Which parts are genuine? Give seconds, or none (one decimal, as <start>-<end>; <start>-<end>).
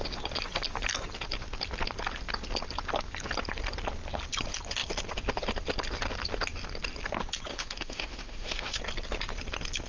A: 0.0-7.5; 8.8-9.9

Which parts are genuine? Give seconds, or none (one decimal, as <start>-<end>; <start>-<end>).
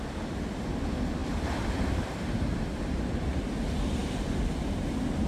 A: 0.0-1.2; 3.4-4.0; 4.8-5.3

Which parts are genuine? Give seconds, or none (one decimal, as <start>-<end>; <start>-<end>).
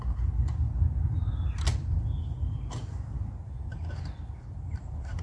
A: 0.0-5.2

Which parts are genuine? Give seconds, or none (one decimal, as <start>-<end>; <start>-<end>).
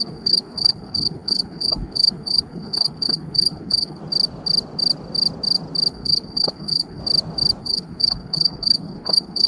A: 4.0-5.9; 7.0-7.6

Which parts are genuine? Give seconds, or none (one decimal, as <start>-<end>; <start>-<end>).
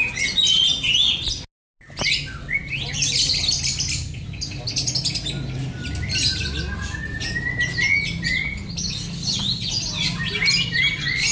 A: 0.0-11.3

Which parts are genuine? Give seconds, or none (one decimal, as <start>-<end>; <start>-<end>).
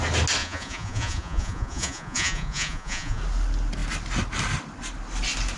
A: 0.0-0.4; 3.2-5.6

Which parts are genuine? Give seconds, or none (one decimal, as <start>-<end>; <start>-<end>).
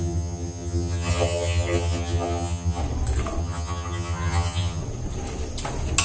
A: 2.8-3.4; 4.8-6.0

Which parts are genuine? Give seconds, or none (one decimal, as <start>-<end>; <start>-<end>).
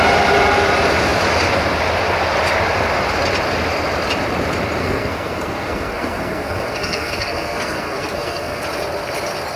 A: 0.0-4.8; 8.6-9.6